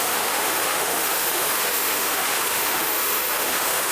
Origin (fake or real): fake